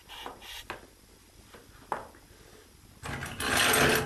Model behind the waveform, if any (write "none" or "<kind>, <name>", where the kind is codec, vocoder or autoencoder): none